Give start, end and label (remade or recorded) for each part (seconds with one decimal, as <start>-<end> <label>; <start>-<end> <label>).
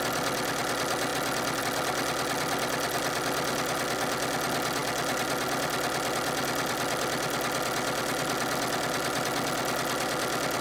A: 0.0-10.6 recorded